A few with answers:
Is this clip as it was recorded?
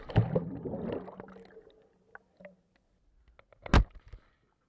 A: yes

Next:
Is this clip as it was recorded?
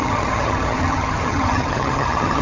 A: no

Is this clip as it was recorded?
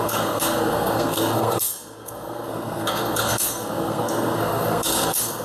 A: no